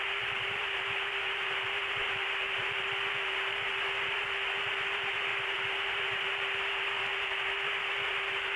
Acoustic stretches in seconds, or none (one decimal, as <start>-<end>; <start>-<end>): none